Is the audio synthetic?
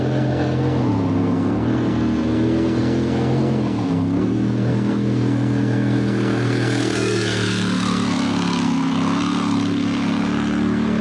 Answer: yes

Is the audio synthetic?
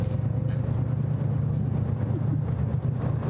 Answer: no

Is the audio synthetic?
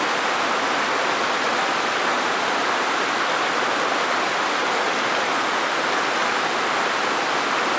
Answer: no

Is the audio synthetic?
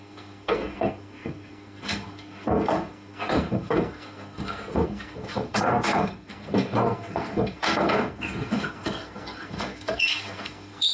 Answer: yes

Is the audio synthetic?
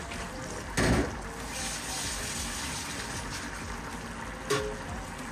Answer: no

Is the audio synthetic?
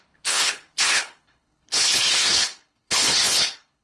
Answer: yes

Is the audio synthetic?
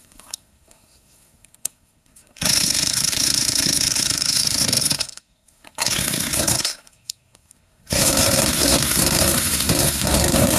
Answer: yes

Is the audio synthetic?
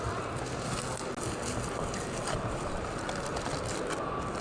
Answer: no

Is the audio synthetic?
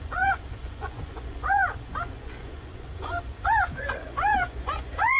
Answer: yes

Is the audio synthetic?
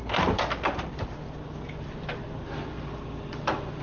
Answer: no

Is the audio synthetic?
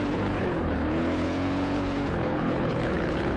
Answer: yes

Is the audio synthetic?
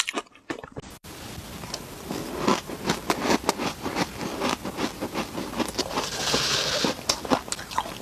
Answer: no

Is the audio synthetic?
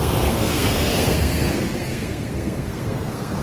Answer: yes